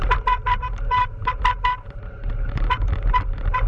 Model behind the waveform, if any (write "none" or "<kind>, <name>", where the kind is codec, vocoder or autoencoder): vocoder, BigVGAN v2